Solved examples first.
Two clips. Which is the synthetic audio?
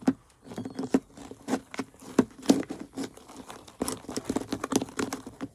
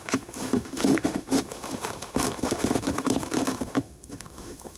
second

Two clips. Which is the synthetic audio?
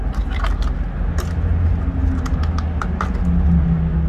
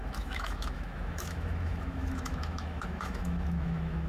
second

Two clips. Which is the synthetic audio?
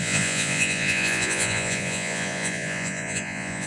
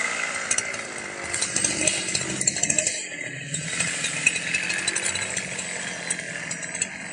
first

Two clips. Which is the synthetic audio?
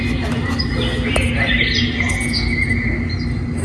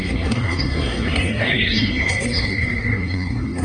second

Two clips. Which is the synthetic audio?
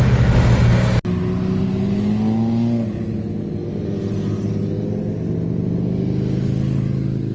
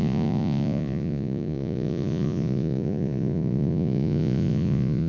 second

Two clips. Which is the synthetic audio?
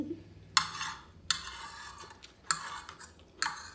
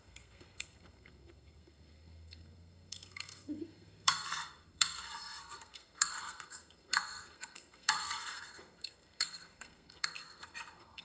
second